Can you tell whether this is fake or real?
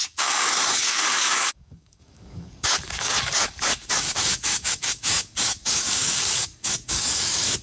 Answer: fake